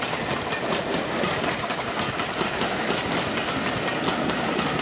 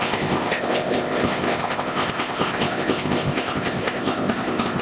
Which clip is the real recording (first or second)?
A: first